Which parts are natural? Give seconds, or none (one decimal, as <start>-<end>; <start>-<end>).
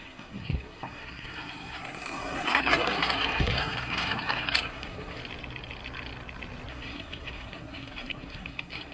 5.2-6.7